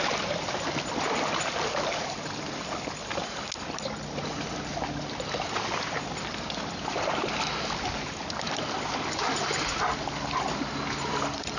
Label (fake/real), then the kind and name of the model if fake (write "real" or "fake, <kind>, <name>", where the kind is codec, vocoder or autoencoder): real